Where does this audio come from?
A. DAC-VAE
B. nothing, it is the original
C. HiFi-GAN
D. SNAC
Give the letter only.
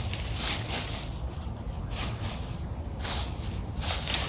B